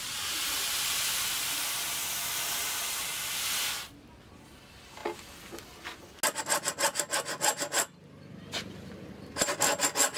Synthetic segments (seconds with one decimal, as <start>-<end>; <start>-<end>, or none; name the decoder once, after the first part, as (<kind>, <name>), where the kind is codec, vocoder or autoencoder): none

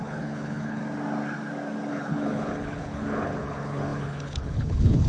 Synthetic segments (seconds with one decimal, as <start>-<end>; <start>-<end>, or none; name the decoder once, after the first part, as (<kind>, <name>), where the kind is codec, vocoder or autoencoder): 0.0-0.8 (codec, HILCodec); 1.9-5.1

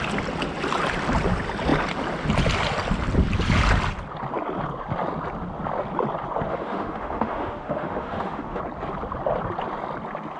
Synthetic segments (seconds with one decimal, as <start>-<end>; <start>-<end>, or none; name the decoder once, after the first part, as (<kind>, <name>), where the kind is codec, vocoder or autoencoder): 6.5-8.6 (autoencoder, DAC-VAE)

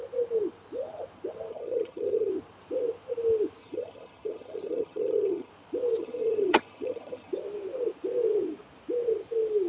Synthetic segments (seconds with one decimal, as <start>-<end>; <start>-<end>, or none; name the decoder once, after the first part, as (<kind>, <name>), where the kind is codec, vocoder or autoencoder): 1.5-2.3 (vocoder, HiFi-GAN); 3.6-5.5; 6.0-7.3

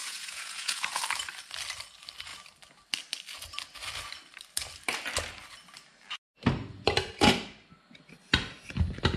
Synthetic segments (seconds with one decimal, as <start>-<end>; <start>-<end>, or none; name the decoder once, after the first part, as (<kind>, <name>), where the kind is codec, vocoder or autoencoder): 0.0-1.0 (vocoder, Vocos)